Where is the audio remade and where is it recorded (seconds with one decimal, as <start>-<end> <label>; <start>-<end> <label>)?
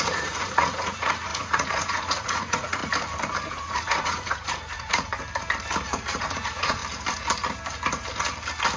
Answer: 0.0-2.8 remade; 2.8-3.5 recorded; 3.5-5.1 remade; 5.1-5.8 recorded; 5.8-6.8 remade; 6.8-8.8 recorded